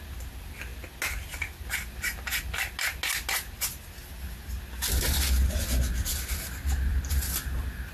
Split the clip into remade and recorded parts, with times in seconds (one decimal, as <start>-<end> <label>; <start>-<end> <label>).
0.0-7.9 recorded